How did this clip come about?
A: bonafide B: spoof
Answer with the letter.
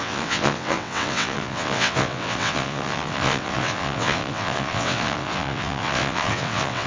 B